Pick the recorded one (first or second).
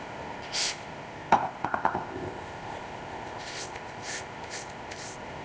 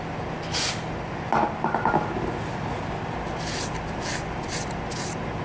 second